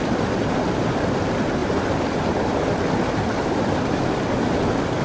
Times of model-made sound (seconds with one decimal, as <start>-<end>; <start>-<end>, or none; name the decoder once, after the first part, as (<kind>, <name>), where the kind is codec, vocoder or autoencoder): none